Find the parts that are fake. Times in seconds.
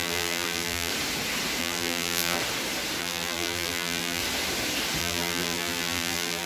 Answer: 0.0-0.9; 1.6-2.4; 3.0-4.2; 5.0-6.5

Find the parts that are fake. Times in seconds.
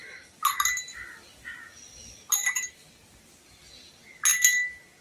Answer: none